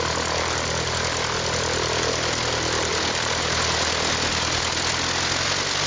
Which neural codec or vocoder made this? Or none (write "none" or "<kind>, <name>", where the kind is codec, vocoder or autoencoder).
none